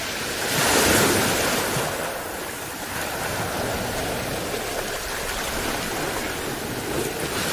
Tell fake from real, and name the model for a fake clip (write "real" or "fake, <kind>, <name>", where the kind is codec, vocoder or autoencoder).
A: real